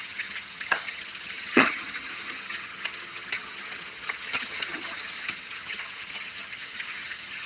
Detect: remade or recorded remade